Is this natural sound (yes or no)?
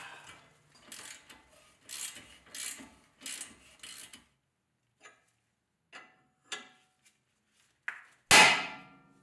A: yes